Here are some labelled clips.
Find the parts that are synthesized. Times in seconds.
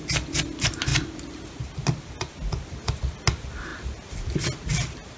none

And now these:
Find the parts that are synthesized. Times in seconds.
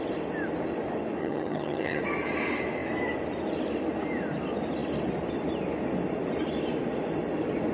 1.2-2.0 (vocoder, HiFi-GAN)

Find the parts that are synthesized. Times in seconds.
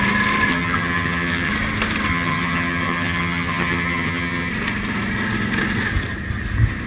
0.5-1.5 (vocoder, HiFi-GAN); 2.1-4.5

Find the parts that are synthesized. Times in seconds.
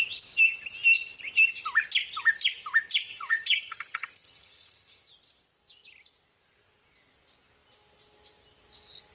3.1-5.1 (vocoder, HiFi-GAN)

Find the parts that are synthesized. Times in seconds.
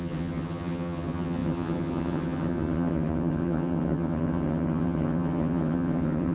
0.0-6.3 (vocoder, HiFi-GAN)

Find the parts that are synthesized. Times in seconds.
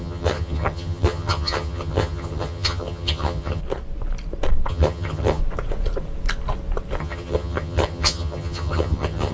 0.0-3.6 (vocoder, HiFi-GAN); 4.7-5.4; 7.0-9.3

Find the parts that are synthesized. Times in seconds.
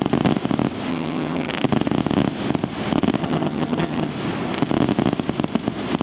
0.9-1.5 (vocoder, HiFi-GAN); 3.2-4.1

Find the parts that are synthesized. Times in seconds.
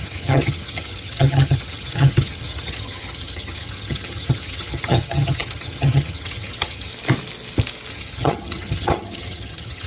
0.0-6.9 (vocoder, HiFi-GAN); 7.9-9.9